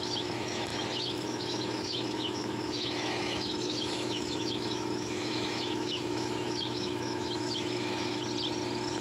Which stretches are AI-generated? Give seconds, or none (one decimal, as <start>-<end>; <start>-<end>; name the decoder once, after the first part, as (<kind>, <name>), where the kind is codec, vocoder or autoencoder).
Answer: 0.0-8.2 (autoencoder, DAC-VAE)